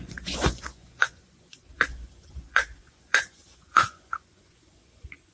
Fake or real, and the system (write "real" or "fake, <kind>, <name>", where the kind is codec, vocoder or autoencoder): fake, vocoder, Vocos